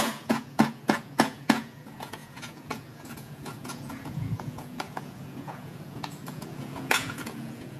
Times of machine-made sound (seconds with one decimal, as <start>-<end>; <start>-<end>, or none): 0.0-7.8